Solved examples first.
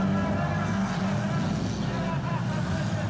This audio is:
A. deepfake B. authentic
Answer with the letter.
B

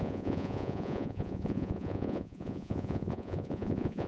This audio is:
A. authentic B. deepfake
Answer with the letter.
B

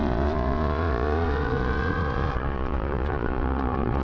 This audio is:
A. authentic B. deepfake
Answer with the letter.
B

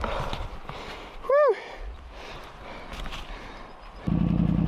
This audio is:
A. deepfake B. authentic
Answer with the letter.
B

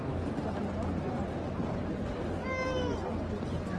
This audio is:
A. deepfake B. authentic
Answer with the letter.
B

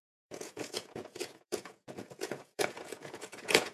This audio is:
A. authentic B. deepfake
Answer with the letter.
B